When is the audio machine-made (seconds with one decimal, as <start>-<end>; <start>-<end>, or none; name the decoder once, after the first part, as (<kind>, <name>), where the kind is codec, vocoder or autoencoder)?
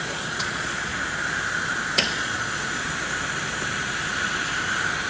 0.0-0.9 (vocoder, Vocos); 1.9-2.9